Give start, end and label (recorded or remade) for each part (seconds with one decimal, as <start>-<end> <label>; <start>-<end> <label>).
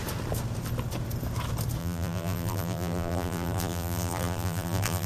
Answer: 0.0-1.8 recorded; 1.8-5.1 remade